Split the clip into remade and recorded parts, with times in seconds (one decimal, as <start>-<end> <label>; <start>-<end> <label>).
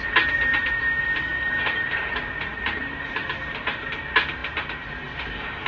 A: 0.0-5.7 recorded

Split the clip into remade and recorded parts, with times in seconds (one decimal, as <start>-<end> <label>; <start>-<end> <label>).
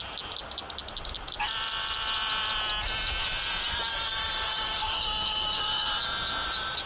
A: 0.0-3.9 recorded; 3.9-5.9 remade; 5.9-6.9 recorded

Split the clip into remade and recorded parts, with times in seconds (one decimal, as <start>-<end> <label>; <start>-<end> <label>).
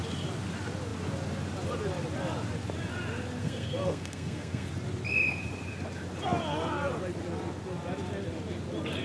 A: 0.0-3.4 recorded; 3.4-4.7 remade; 4.7-9.0 recorded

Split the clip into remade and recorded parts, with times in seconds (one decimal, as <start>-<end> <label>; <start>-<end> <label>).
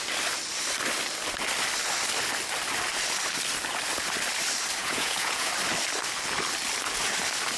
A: 0.0-4.8 recorded; 4.8-5.5 remade; 5.5-7.6 recorded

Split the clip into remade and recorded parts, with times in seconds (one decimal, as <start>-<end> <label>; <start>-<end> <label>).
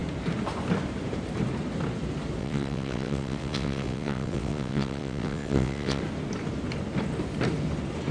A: 0.0-2.4 recorded; 2.4-6.0 remade; 6.0-8.1 recorded